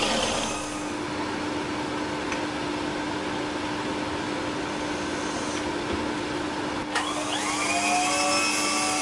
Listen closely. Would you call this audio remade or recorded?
recorded